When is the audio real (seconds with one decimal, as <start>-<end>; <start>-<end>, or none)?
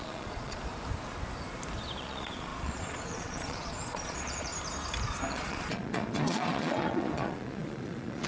0.7-2.0; 4.5-5.3